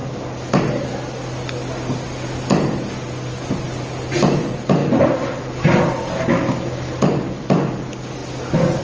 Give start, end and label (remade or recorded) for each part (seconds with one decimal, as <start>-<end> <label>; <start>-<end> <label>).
0.0-8.8 recorded